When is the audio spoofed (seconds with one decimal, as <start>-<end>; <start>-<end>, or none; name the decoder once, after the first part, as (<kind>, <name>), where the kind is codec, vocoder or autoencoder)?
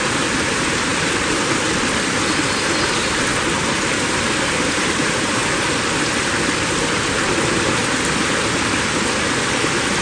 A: 0.0-0.9 (vocoder, BigVGAN v2); 2.4-3.3; 3.9-5.4